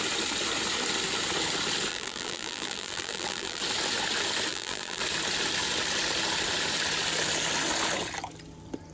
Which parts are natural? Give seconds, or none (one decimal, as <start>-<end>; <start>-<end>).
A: 0.0-1.9; 3.6-4.5; 5.0-8.9